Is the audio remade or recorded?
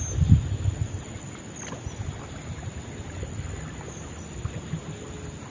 recorded